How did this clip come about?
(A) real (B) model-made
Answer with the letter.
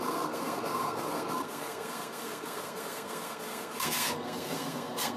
B